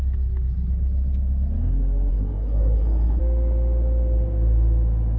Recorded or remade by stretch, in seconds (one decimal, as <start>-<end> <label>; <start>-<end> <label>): 0.0-2.1 recorded; 2.1-3.2 remade; 3.2-5.2 recorded